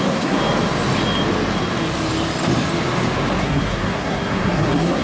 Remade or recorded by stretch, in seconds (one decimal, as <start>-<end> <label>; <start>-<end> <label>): 0.0-0.4 remade; 0.4-3.4 recorded; 3.4-5.0 remade